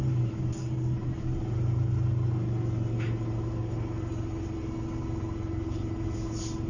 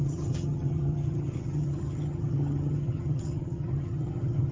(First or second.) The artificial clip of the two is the second